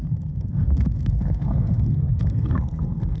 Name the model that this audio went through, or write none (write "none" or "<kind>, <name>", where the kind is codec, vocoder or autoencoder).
codec, SNAC